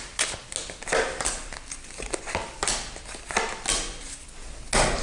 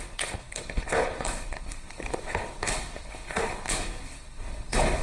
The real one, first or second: first